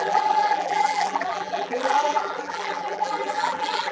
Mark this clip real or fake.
fake